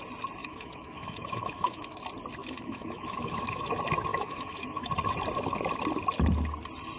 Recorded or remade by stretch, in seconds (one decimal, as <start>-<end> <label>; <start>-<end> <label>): 0.0-0.4 recorded; 0.4-2.0 remade; 2.0-2.4 recorded; 2.4-3.6 remade; 3.6-4.1 recorded; 4.1-4.9 remade; 4.9-7.0 recorded